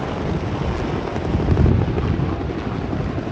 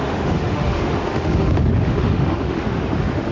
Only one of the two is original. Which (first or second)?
first